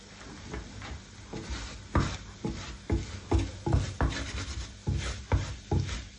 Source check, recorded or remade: recorded